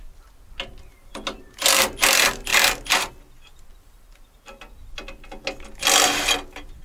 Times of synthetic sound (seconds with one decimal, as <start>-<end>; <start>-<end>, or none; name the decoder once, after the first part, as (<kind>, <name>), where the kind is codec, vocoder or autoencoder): none

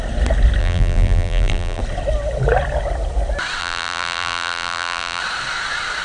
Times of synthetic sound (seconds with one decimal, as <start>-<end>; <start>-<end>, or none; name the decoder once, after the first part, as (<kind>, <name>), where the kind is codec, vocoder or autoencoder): 0.6-1.8 (vocoder, BigVGAN v2); 3.6-5.2

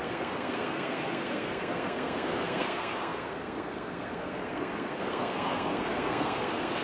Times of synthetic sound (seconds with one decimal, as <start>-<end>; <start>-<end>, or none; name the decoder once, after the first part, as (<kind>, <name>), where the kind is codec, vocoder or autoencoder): 0.0-6.8 (codec, SNAC)

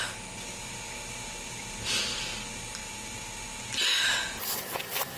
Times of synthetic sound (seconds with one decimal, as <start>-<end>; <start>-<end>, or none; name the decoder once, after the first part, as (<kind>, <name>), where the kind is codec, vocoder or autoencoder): none

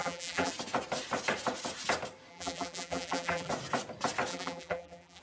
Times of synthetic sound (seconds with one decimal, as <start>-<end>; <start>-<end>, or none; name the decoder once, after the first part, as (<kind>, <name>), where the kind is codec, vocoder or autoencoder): 0.0-0.5 (vocoder, BigVGAN v2); 2.3-3.5; 4.3-5.2

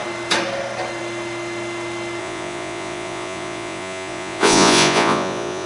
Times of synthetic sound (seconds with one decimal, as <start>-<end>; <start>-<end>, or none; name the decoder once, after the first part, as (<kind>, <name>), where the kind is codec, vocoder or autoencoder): 2.2-5.7 (vocoder, Vocos)